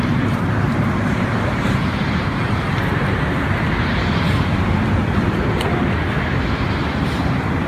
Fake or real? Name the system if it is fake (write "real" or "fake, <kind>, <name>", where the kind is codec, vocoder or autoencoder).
fake, vocoder, BigVGAN v2